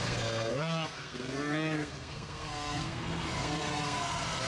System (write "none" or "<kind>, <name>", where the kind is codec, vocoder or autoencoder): codec, SNAC